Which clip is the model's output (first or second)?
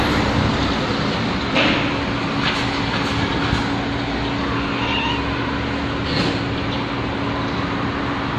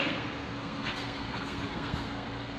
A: second